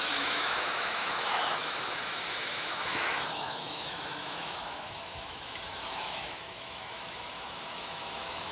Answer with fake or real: fake